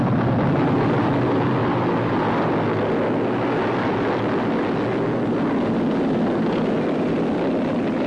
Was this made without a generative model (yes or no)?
yes